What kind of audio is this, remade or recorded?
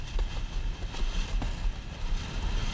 recorded